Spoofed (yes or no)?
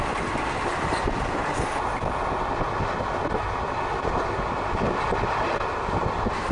no